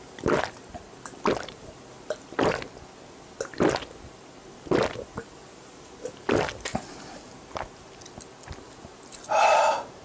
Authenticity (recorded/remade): recorded